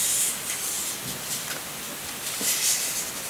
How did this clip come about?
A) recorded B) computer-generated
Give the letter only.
A